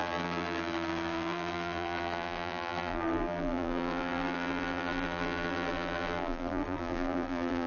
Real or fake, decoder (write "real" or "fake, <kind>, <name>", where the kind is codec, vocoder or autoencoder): fake, vocoder, BigVGAN v2